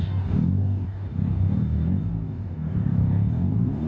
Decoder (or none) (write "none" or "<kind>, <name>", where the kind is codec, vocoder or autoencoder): codec, DAC